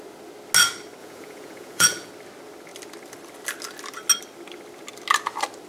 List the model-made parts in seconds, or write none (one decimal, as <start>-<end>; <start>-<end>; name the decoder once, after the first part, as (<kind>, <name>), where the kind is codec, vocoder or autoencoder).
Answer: 1.0-2.1 (vocoder, Vocos)